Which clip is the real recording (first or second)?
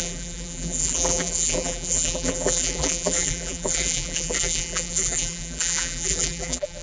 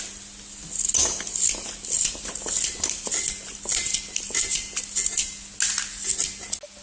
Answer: second